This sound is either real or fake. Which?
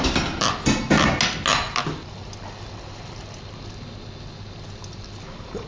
real